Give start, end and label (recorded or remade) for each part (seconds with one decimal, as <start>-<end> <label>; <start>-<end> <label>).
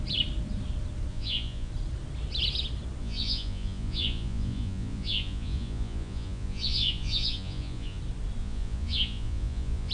0.0-1.1 recorded; 1.1-1.7 remade; 1.7-3.0 recorded; 3.0-8.0 remade; 8.0-8.4 recorded; 8.4-9.9 remade